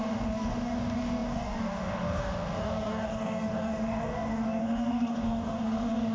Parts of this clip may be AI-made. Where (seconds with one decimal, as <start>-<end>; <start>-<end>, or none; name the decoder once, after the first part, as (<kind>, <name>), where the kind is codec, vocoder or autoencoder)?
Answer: 0.0-6.1 (codec, DAC)